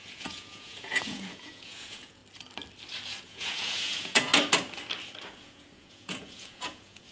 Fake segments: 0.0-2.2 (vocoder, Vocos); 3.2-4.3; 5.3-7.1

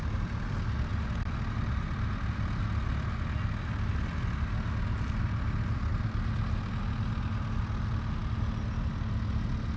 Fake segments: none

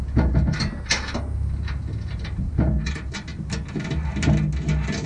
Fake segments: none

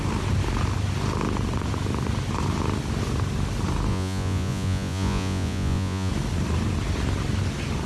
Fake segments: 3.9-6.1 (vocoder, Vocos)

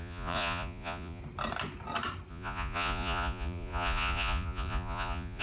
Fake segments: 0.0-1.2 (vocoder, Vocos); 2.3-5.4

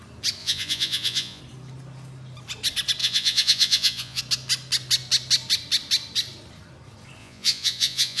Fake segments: 0.4-1.4 (vocoder, Vocos); 3.0-4.2; 7.2-8.2

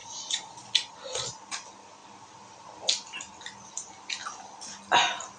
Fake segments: 0.0-0.7 (vocoder, Vocos)

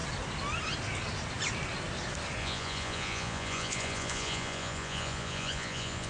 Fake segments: 2.4-6.1 (vocoder, Vocos)